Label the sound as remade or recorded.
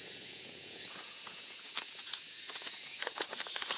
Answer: remade